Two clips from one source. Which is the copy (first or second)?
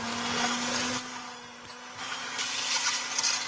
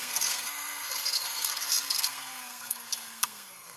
second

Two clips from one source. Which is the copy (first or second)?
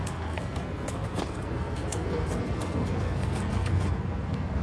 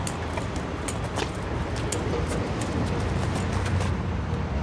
first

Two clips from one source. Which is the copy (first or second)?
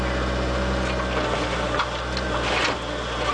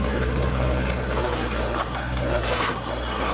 second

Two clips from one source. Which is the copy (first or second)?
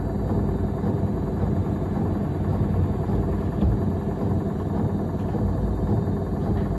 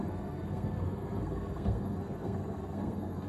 second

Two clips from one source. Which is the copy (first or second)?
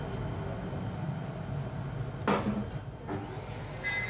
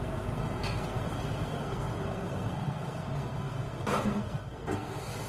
second